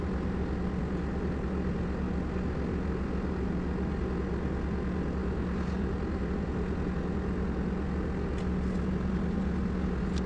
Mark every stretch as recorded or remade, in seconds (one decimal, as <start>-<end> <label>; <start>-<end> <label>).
0.0-10.3 recorded